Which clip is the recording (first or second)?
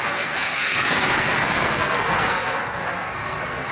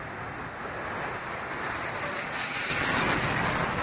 second